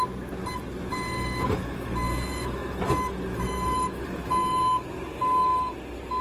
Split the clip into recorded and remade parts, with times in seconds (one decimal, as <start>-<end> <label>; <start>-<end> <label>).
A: 0.0-0.9 recorded; 0.9-4.6 remade; 4.6-5.1 recorded; 5.1-5.7 remade; 5.7-6.2 recorded